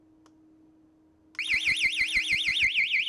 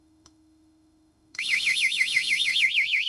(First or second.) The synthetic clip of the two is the second